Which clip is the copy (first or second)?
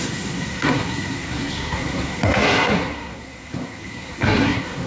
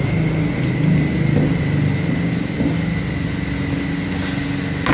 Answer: first